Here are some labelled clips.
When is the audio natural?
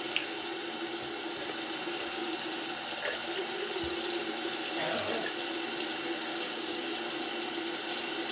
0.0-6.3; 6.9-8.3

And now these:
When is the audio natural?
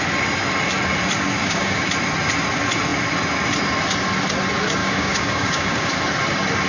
0.0-1.4; 1.9-4.8; 5.9-6.7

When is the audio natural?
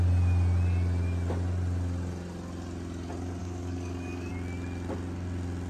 0.0-3.4; 4.3-5.7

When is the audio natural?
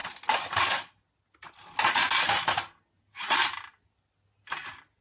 0.0-5.0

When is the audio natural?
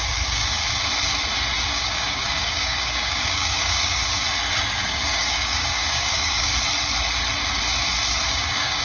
0.6-1.7; 4.0-4.8; 6.5-8.3